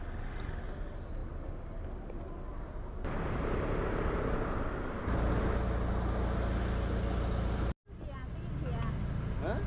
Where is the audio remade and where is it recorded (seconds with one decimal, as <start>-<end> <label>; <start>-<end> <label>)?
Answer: 0.0-9.7 recorded